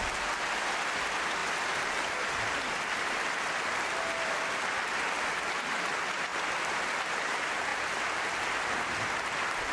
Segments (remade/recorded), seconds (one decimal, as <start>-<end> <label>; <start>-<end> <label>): 0.0-9.7 recorded